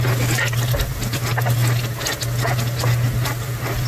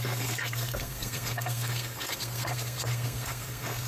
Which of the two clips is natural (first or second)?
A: first